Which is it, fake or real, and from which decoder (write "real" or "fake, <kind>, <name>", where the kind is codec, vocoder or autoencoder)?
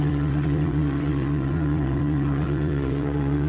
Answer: fake, vocoder, WaveNeXt